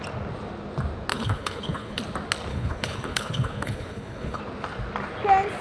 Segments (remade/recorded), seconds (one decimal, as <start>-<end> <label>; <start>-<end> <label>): 0.0-1.1 recorded; 1.1-2.0 remade; 2.0-2.5 recorded; 2.5-4.4 remade; 4.4-5.6 recorded